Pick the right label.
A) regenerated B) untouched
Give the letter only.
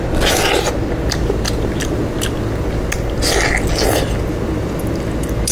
B